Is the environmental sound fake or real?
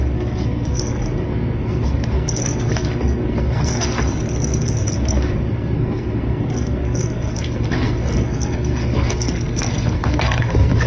fake